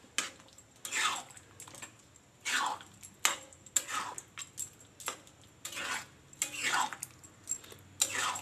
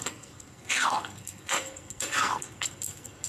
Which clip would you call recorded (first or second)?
first